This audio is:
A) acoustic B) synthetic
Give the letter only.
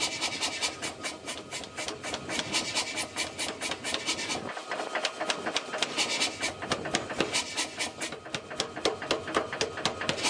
A